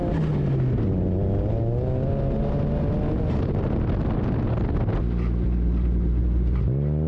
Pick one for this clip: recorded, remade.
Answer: recorded